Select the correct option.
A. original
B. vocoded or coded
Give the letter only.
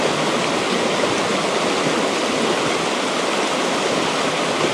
A